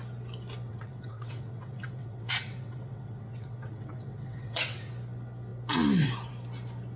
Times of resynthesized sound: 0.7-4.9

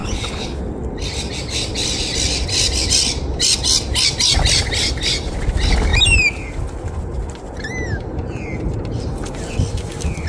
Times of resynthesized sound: 0.0-0.6

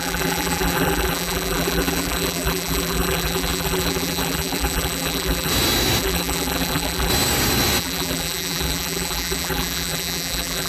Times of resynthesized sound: 0.0-5.5; 6.0-7.1; 7.8-10.7

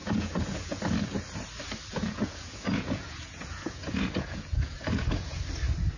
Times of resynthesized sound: 0.0-0.8; 2.0-5.4

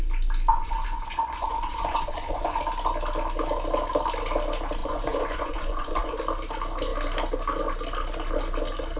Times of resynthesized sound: 0.5-2.6; 4.8-6.2

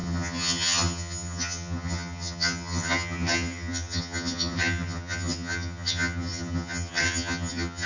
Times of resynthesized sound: 0.0-7.9